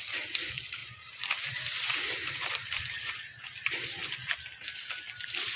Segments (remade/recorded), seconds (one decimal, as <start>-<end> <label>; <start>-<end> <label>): 0.0-0.8 recorded; 0.8-2.8 remade; 2.8-5.6 recorded